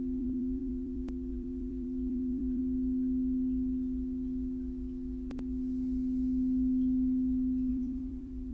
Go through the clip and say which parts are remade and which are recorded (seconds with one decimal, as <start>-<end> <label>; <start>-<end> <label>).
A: 0.0-2.6 remade; 2.6-7.7 recorded; 7.7-8.5 remade